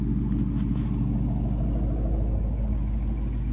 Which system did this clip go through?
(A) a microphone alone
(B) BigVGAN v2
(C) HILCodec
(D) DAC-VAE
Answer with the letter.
A